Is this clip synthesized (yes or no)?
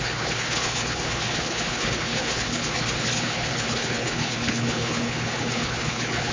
yes